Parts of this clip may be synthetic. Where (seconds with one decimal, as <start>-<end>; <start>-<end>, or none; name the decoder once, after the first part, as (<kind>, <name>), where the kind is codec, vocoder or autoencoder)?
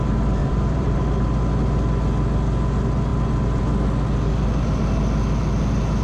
0.4-1.0 (vocoder, BigVGAN v2)